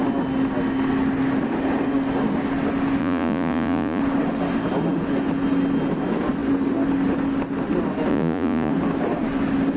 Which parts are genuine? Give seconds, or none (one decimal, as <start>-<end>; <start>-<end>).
0.0-3.0; 4.0-8.1; 8.7-9.8